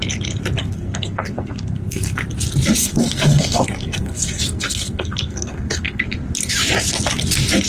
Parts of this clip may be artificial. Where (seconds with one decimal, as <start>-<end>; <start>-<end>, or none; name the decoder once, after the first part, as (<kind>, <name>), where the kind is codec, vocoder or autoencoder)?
0.6-2.2 (codec, SNAC); 2.8-6.0